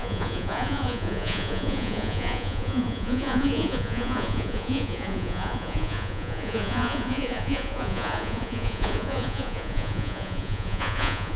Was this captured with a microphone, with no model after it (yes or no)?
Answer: no